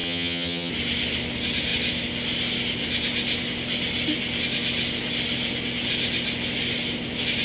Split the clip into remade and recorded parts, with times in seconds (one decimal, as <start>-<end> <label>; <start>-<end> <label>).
0.0-0.7 remade; 0.7-7.4 recorded